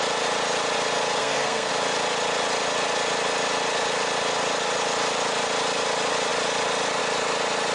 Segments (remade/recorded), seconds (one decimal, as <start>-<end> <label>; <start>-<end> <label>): 0.0-1.2 recorded; 1.2-1.7 remade; 1.7-7.7 recorded

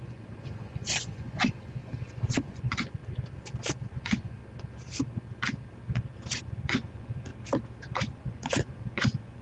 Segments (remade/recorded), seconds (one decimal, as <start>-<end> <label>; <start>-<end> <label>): 0.0-1.8 remade; 1.8-2.4 recorded; 2.4-3.0 remade; 3.0-3.9 recorded; 3.9-4.4 remade; 4.4-6.4 recorded; 6.4-7.3 remade; 7.3-8.1 recorded; 8.1-9.4 remade

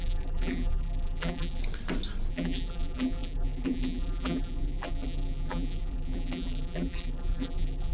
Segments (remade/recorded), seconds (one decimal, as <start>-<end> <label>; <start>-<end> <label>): 0.0-1.6 remade; 1.6-2.3 recorded; 2.3-7.9 remade